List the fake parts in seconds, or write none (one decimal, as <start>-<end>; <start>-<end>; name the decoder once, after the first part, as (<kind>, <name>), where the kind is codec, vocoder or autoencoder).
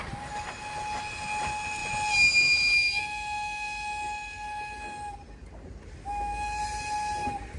none